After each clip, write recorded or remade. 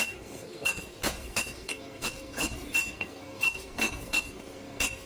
remade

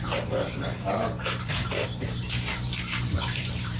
remade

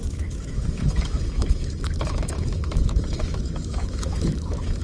remade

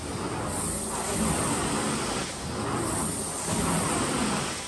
recorded